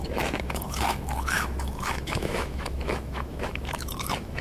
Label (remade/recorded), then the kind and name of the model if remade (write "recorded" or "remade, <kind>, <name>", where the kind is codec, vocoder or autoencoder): remade, autoencoder, DAC-VAE